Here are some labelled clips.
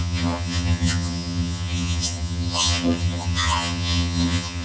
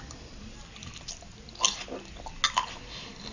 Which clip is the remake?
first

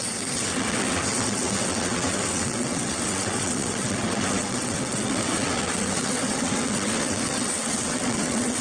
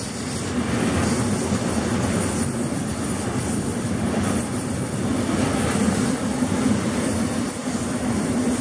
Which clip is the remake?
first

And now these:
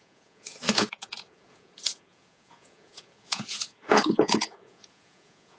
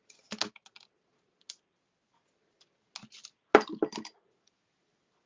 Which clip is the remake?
first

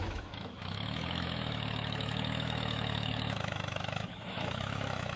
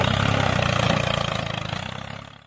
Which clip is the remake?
first